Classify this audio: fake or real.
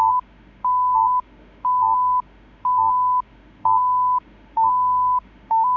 fake